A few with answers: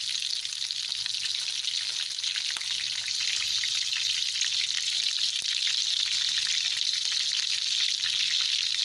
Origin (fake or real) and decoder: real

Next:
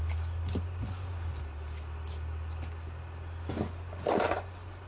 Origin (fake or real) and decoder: real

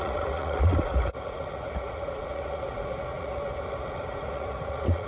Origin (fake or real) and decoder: fake, vocoder, Vocos